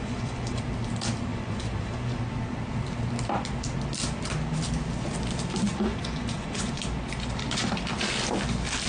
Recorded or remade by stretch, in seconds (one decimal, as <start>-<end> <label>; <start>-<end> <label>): 0.0-0.6 remade; 0.6-1.3 recorded; 1.3-2.2 remade; 2.2-5.7 recorded; 5.7-6.8 remade; 6.8-8.9 recorded